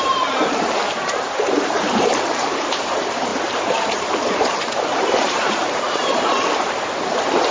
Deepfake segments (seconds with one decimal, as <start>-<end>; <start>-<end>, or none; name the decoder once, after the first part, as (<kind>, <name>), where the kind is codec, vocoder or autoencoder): 0.0-7.5 (vocoder, BigVGAN v2)